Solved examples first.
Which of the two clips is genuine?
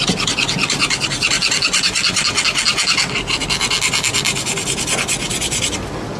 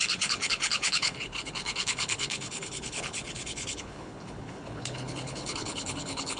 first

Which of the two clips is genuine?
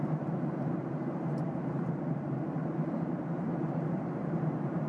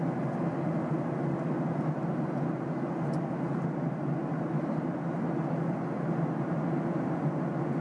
second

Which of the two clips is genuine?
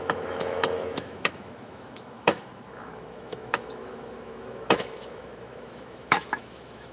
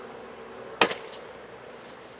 second